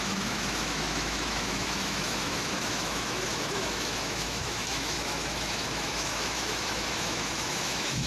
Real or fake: fake